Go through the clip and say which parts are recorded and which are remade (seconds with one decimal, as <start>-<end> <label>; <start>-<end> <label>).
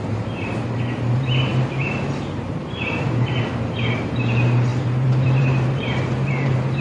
0.0-1.5 remade; 1.5-2.2 recorded; 2.2-3.5 remade; 3.5-4.0 recorded; 4.0-6.8 remade